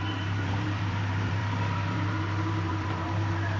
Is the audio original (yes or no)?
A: no